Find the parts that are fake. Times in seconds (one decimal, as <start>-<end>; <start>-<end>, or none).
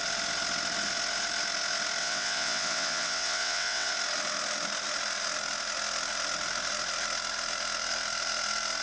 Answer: 2.0-3.9